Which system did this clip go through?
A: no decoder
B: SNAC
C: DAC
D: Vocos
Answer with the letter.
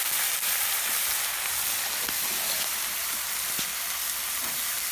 A